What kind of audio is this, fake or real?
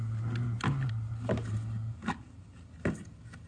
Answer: real